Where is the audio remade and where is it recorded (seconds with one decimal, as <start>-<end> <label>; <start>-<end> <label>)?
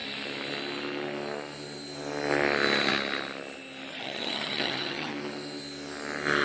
0.0-3.9 recorded; 3.9-5.1 remade; 5.1-6.4 recorded